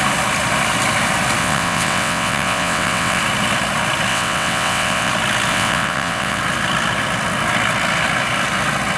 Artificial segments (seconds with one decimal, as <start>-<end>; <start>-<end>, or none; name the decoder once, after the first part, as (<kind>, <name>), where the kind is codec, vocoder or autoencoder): 1.4-3.2 (vocoder, WaveNeXt); 4.1-5.1; 5.5-6.4